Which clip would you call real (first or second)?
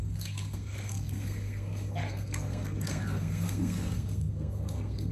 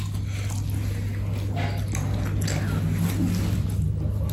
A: second